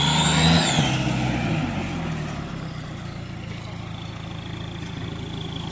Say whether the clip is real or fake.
real